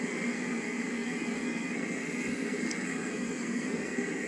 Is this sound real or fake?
fake